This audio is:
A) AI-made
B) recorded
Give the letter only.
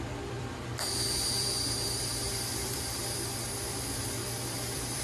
A